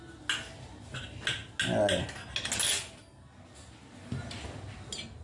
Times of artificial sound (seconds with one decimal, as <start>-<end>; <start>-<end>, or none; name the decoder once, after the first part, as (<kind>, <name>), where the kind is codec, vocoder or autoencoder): none